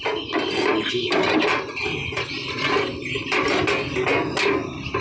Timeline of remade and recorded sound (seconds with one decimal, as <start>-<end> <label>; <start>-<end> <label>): 0.0-0.7 recorded; 0.7-3.7 remade; 3.7-5.0 recorded